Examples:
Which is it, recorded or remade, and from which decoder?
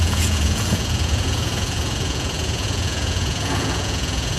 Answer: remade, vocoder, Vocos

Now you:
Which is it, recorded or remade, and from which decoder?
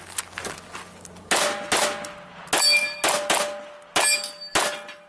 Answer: recorded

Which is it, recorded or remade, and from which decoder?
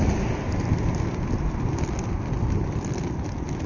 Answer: recorded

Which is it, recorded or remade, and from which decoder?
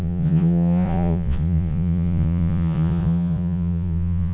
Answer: remade, vocoder, Vocos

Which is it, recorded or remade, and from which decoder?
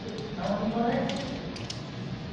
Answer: remade, vocoder, Vocos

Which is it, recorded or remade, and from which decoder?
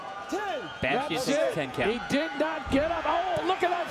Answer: remade, vocoder, Vocos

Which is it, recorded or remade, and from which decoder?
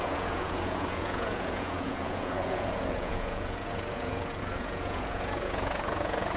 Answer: remade, vocoder, Vocos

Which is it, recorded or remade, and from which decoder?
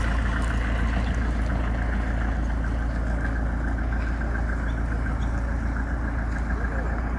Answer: recorded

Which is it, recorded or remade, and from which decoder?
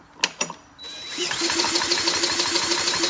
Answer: recorded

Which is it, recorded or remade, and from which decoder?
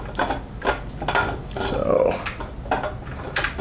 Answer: recorded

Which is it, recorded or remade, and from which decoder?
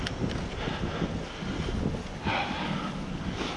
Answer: recorded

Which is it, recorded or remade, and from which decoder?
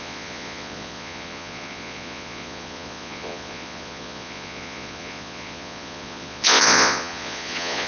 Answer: remade, vocoder, Vocos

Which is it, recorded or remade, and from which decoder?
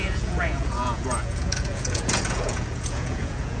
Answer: remade, vocoder, Vocos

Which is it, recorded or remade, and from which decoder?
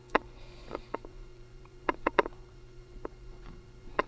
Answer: remade, vocoder, Vocos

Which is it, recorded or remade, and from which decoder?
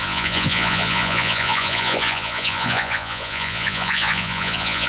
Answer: remade, vocoder, Vocos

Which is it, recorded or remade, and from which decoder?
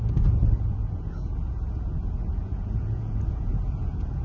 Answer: remade, vocoder, Vocos